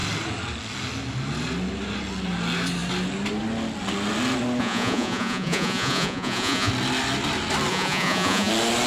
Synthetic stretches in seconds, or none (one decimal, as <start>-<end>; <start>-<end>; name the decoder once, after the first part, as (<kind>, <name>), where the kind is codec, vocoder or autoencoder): 4.6-6.7 (vocoder, Vocos); 7.7-8.5